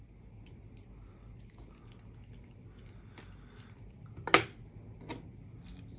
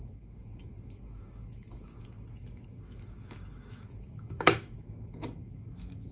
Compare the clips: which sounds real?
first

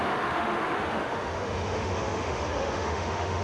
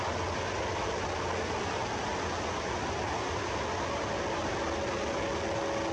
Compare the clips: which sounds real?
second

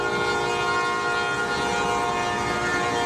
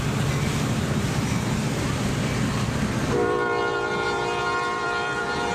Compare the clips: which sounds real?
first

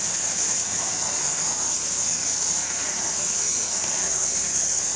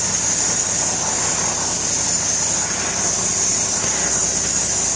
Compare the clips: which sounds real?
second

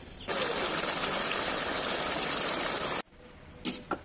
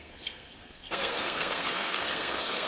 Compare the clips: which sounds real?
first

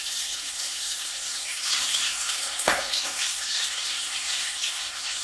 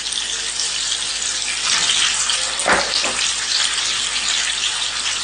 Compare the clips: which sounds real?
second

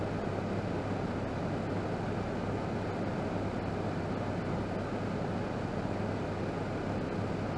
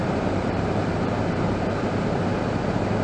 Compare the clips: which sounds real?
first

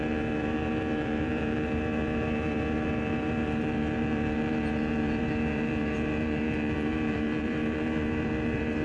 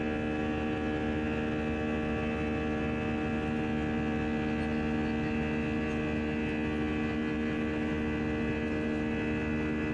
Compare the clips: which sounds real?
second